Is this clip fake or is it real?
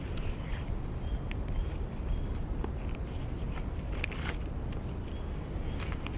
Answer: real